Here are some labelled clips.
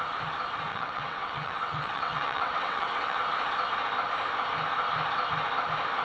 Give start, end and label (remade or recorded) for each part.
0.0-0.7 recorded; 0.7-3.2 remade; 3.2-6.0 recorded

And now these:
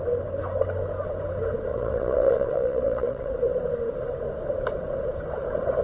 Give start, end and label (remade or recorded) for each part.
0.0-1.7 recorded; 1.7-3.3 remade; 3.3-5.8 recorded

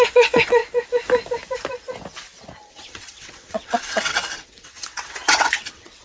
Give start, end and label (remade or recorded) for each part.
0.0-0.6 remade; 0.6-2.7 recorded; 2.7-6.0 remade

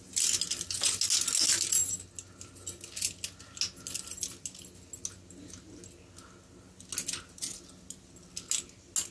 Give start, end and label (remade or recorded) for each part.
0.0-9.1 recorded

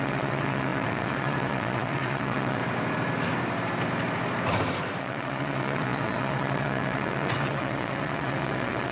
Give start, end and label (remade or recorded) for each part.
0.0-2.6 remade; 2.6-5.0 recorded; 5.0-8.9 remade

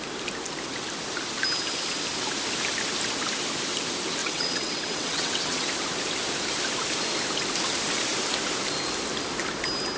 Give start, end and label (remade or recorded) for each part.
0.0-4.2 recorded; 4.2-5.7 remade; 5.7-10.0 recorded

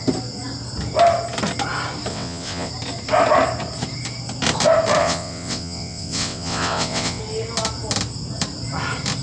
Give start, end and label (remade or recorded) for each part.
0.0-2.1 recorded; 2.1-2.7 remade; 2.7-5.0 recorded; 5.0-7.2 remade; 7.2-9.2 recorded